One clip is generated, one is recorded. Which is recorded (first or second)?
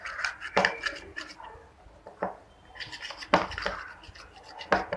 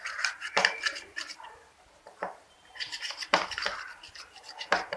first